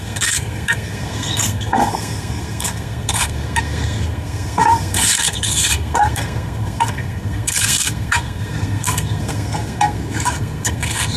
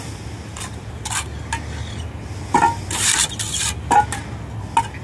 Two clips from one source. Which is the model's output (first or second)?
first